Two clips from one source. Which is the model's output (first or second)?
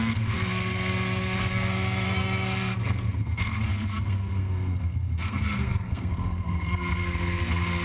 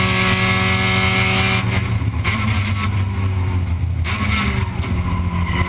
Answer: first